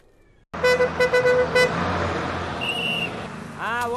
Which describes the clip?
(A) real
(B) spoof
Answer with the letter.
A